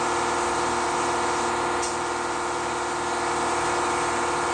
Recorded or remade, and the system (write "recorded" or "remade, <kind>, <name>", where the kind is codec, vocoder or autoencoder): recorded